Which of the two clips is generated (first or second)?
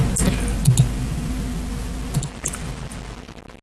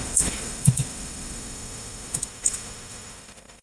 second